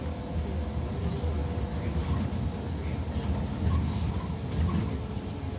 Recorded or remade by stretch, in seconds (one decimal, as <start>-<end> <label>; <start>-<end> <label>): 0.0-5.6 recorded